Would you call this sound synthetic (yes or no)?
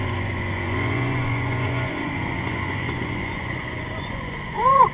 yes